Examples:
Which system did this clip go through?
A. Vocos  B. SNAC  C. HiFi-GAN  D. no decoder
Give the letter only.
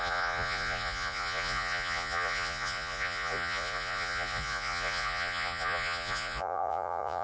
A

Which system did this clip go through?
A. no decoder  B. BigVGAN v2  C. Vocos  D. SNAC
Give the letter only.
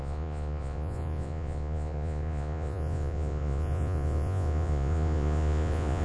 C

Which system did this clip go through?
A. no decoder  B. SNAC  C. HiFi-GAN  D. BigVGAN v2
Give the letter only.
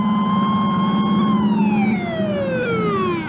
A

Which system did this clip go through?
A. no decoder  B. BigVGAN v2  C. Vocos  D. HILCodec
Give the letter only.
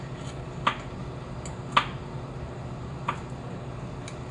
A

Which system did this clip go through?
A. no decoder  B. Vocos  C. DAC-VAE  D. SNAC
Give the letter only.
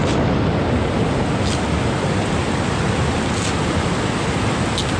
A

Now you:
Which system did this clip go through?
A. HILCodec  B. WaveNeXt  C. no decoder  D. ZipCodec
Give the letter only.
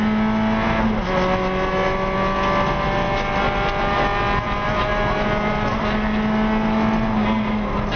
C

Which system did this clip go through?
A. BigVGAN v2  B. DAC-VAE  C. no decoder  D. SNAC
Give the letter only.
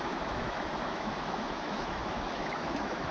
B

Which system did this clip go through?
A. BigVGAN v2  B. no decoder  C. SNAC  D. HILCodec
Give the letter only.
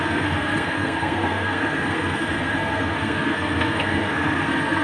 C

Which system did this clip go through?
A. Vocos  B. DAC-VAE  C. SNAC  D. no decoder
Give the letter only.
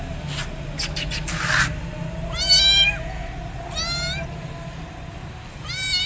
D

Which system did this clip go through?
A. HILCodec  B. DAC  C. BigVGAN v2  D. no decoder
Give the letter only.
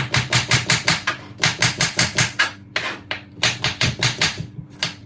C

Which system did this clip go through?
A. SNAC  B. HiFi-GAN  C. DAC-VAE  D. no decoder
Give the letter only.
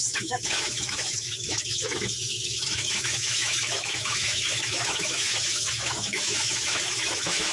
C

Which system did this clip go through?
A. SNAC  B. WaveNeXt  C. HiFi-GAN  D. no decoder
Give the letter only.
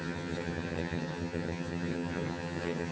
C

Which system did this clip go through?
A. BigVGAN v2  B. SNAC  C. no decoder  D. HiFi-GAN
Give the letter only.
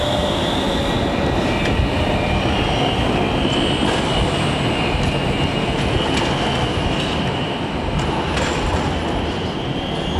C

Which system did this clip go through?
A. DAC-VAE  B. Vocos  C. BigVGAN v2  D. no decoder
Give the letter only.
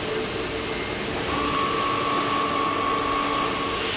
D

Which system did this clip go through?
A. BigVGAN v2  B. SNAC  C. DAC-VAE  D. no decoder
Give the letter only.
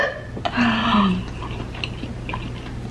D